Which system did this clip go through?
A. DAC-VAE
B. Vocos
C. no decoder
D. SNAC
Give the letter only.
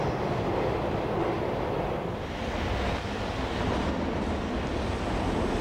C